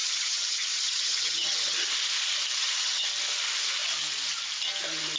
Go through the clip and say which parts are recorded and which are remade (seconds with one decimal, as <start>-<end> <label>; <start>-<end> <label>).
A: 0.0-1.9 remade; 1.9-2.6 recorded; 2.6-3.1 remade; 3.1-5.2 recorded